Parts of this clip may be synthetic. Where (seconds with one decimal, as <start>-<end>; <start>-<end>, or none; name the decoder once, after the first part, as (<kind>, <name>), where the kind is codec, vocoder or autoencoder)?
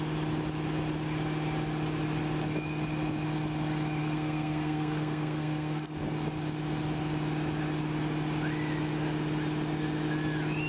4.0-5.9 (codec, SNAC)